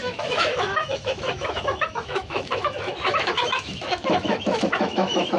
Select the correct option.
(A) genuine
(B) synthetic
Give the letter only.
B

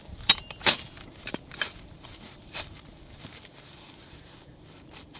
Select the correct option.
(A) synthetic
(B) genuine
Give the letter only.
A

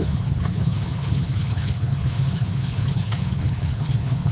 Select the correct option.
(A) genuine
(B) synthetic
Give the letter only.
B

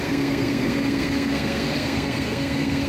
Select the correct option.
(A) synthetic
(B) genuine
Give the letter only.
A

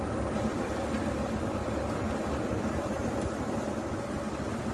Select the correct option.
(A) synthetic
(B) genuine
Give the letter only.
B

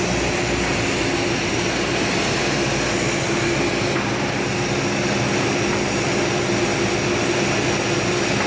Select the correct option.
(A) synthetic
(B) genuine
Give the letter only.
B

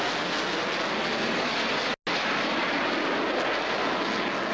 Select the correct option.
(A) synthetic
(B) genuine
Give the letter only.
B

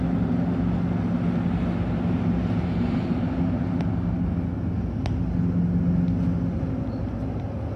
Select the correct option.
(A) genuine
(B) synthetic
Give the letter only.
A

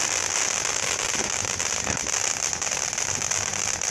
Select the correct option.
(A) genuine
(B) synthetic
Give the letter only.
B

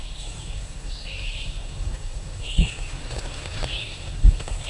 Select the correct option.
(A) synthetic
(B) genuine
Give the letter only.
A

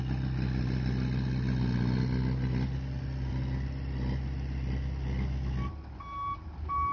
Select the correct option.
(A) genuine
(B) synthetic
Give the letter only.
A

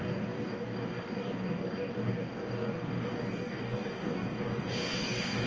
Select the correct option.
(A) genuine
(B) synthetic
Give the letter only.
B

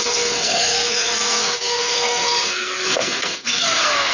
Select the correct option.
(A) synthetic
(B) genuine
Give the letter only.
A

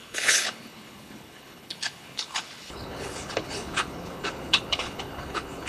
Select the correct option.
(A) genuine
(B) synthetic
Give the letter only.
B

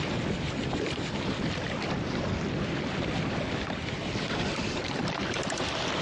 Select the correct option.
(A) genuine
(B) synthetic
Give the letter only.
A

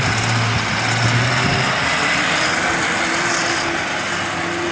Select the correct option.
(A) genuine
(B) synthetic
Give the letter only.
A